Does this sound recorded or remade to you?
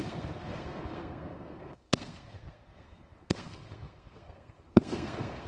remade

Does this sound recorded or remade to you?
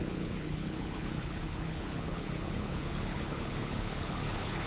remade